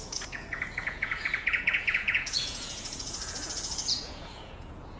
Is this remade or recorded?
remade